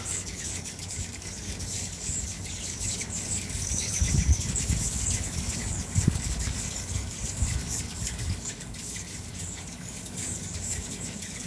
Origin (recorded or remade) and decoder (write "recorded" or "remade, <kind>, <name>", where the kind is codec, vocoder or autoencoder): remade, codec, DAC